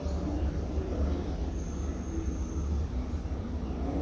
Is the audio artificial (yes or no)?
no